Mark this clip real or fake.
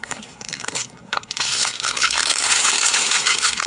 fake